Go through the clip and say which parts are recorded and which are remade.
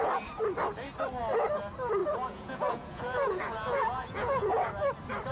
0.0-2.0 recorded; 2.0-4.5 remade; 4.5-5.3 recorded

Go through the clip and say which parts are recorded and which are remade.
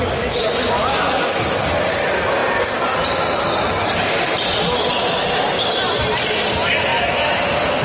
0.0-7.8 recorded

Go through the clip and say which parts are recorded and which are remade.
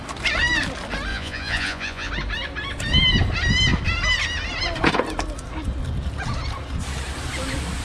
0.0-1.1 recorded; 1.1-2.1 remade; 2.1-7.8 recorded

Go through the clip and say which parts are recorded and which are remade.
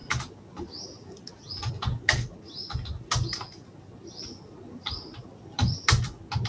0.0-6.5 recorded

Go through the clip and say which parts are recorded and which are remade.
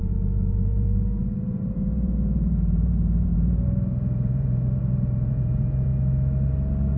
0.0-5.9 remade; 5.9-7.0 recorded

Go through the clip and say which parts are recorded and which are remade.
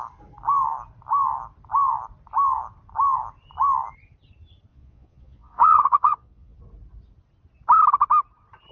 0.0-4.7 recorded; 4.7-6.6 remade; 6.6-8.7 recorded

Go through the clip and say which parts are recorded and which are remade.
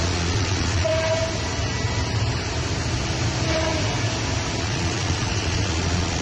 0.0-0.9 remade; 0.9-4.6 recorded; 4.6-6.2 remade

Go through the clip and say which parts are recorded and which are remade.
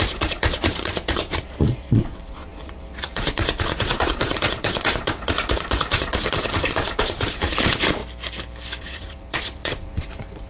0.0-8.0 remade; 8.0-8.8 recorded; 8.8-10.5 remade